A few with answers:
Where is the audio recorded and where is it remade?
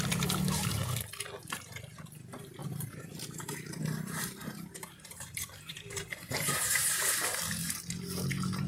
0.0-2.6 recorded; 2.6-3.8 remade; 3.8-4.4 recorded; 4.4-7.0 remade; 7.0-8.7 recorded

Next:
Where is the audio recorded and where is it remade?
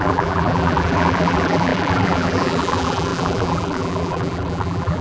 0.0-5.0 remade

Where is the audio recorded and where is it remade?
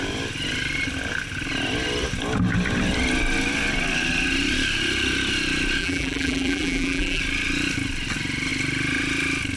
0.0-5.8 recorded; 5.8-7.2 remade; 7.2-9.6 recorded